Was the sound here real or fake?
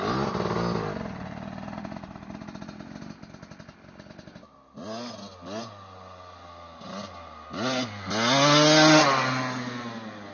real